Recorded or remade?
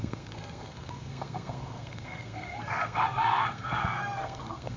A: remade